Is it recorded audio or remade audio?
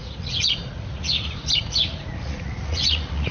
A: remade